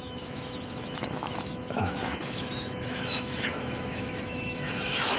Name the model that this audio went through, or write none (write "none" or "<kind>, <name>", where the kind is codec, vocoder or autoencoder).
autoencoder, DAC-VAE